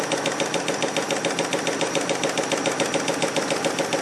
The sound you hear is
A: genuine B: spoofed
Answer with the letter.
A